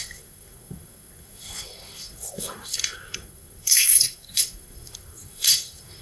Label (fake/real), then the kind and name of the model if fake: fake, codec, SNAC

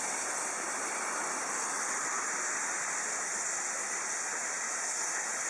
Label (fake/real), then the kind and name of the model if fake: real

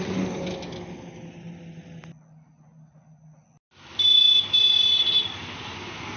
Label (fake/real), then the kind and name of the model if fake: real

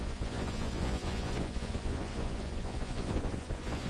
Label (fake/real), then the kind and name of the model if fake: fake, vocoder, Vocos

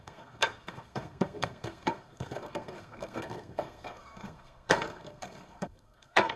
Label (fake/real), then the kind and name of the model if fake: fake, codec, SNAC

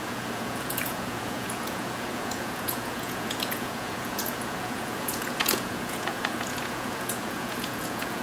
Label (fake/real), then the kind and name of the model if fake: fake, vocoder, Vocos